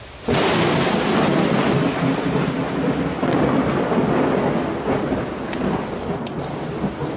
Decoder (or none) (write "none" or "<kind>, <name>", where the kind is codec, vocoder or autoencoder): none